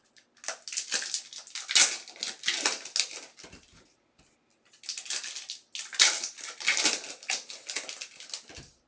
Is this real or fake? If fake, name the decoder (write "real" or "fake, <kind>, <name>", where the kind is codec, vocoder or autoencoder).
real